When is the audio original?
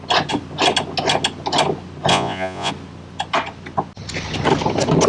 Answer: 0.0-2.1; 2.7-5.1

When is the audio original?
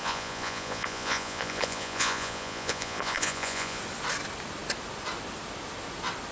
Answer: 3.8-6.3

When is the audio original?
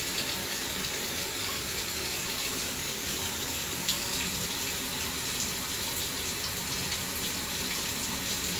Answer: 0.0-0.4; 4.3-8.6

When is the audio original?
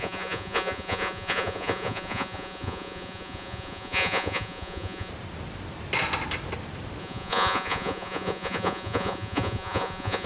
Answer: 5.1-7.0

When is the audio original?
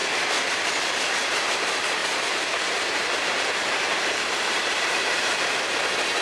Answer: 0.0-2.0; 5.7-6.2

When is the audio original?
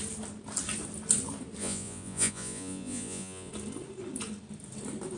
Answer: 0.0-1.6; 3.5-5.2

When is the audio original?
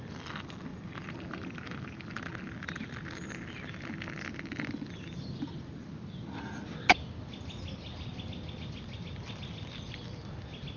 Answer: 0.0-10.8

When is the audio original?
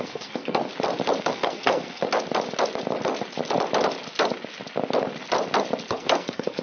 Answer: 0.7-1.2; 2.0-5.9